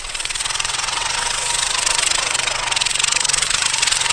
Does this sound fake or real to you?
fake